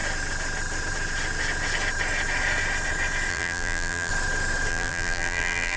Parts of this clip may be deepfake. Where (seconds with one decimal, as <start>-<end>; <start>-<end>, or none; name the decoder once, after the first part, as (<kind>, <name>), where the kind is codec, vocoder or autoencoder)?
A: 3.3-4.1 (vocoder, BigVGAN v2); 4.7-5.8